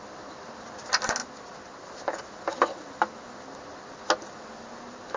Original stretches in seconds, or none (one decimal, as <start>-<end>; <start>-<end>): 0.0-5.2